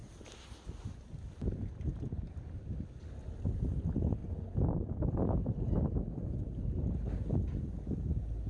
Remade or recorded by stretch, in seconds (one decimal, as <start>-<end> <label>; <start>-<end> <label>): 0.0-8.5 recorded